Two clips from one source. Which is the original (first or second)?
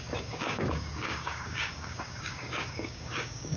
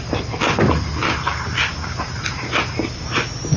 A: second